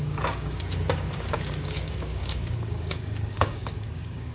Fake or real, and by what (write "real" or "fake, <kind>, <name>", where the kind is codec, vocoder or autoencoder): fake, codec, DAC